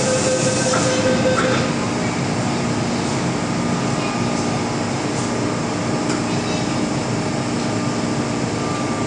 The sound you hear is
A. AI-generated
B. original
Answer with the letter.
B